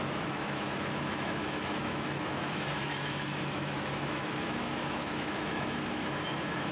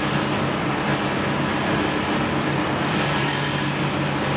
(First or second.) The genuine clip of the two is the second